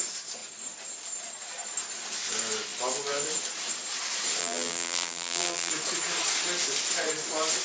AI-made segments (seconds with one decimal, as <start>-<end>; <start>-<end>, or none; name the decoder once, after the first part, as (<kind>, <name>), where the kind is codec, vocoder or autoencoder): 4.4-5.7 (vocoder, BigVGAN v2)